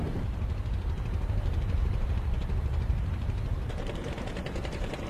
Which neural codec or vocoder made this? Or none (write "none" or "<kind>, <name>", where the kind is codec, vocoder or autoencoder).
vocoder, BigVGAN v2